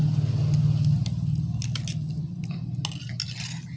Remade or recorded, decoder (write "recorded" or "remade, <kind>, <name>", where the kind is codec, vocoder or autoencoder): recorded